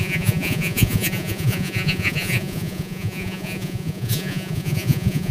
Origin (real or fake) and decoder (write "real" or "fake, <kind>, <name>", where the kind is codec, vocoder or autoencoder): fake, vocoder, Vocos